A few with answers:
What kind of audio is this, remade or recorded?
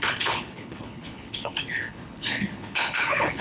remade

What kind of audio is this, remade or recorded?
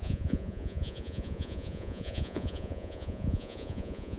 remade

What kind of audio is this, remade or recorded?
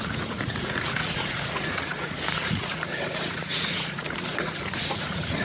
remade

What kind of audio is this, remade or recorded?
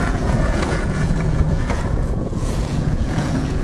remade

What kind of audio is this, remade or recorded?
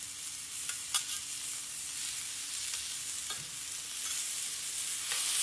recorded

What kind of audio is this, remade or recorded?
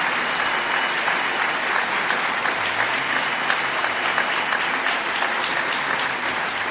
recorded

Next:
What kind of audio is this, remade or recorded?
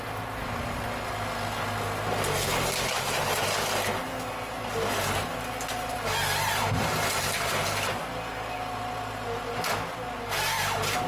recorded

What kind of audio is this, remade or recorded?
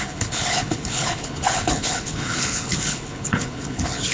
remade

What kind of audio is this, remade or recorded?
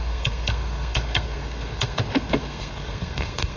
remade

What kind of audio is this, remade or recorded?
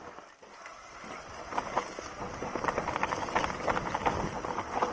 recorded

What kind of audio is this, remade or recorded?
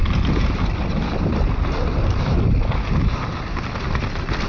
recorded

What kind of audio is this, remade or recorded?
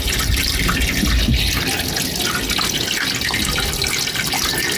recorded